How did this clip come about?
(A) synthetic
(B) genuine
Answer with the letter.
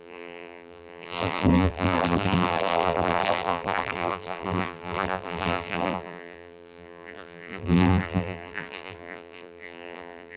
A